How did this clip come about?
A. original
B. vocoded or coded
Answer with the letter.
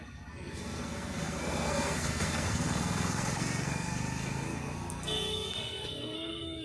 B